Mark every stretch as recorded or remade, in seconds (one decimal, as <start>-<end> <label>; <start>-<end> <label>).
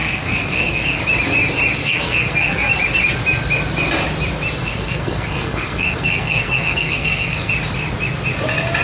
0.0-1.0 remade; 1.0-1.8 recorded; 1.8-2.7 remade; 2.7-4.6 recorded; 4.6-7.5 remade; 7.5-8.8 recorded